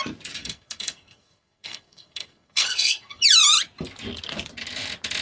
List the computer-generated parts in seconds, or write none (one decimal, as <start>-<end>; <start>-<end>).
0.4-3.2